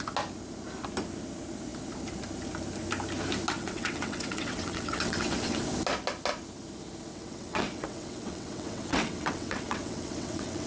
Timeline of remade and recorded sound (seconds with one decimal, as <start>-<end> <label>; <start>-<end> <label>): 0.0-3.6 recorded; 3.6-5.6 remade; 5.6-7.1 recorded; 7.1-10.7 remade